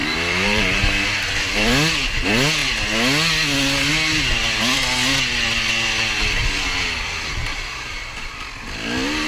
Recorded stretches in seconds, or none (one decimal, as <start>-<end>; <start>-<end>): 0.8-7.4; 8.4-9.3